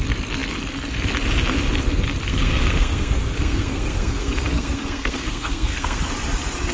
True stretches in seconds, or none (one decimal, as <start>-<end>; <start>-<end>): 0.0-2.3; 6.0-6.7